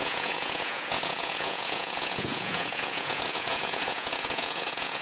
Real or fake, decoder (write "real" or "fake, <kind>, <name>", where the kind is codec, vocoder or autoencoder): fake, vocoder, Vocos